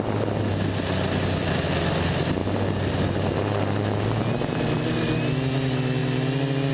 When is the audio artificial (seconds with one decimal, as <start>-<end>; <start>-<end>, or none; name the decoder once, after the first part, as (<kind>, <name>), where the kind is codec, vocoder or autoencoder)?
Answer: none